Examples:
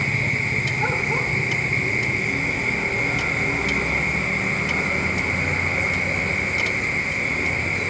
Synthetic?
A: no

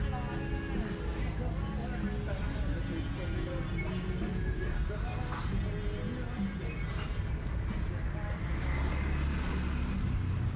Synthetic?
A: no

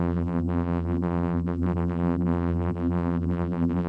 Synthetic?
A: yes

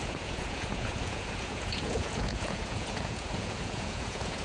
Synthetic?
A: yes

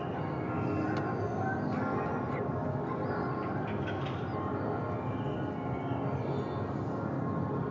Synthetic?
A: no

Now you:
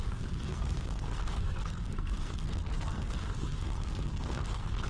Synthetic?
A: yes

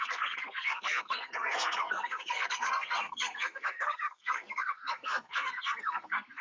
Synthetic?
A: yes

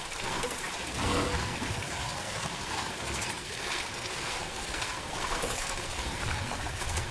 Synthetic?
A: yes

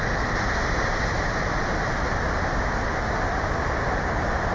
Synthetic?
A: no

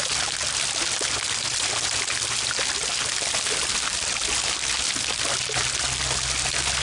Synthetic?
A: no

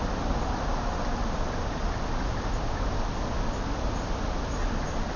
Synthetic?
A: no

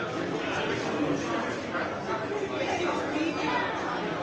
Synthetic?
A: no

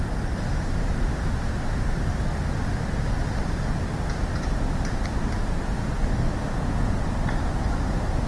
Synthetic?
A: no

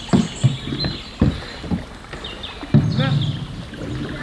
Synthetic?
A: no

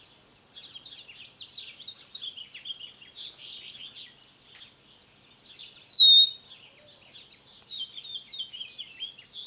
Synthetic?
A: no